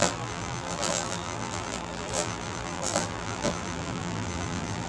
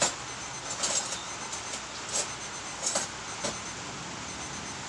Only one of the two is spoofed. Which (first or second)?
first